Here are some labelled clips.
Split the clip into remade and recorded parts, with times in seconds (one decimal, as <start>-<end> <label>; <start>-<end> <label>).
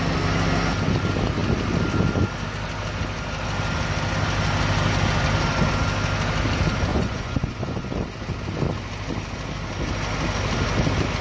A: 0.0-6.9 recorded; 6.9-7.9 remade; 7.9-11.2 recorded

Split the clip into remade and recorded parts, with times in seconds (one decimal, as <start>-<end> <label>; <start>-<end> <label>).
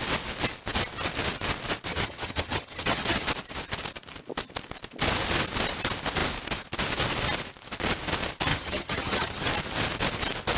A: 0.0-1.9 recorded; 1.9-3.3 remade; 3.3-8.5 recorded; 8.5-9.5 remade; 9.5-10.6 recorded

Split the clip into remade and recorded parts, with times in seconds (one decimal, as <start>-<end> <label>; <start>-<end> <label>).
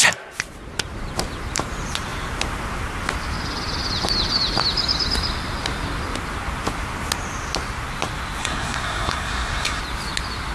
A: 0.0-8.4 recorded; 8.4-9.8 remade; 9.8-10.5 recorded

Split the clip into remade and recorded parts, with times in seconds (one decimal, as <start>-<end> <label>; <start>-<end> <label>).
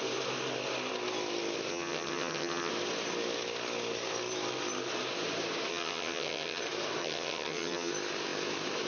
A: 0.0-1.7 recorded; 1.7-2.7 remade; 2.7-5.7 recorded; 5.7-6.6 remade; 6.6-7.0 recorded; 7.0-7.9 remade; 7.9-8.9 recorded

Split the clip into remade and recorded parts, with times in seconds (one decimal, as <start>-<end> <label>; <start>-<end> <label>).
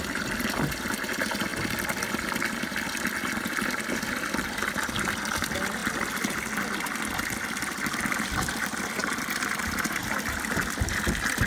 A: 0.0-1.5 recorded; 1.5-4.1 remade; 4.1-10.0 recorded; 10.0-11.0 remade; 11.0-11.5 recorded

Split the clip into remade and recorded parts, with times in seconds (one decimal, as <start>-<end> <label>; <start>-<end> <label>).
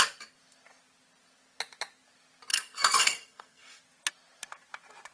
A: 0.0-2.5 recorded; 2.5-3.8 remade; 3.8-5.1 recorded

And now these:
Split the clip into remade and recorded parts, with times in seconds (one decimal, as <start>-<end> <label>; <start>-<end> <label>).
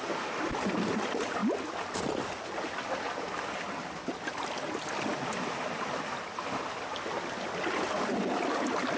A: 0.0-9.0 recorded